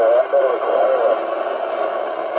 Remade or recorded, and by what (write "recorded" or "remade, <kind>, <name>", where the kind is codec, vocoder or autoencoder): recorded